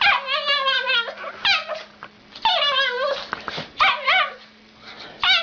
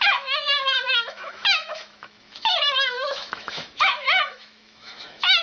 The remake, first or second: second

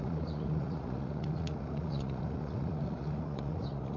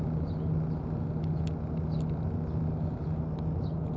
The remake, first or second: first